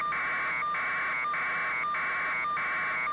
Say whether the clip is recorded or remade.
recorded